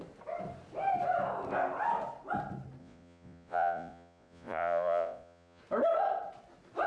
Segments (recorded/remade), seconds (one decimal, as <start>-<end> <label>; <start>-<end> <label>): 0.0-2.8 recorded; 2.8-5.6 remade; 5.6-6.9 recorded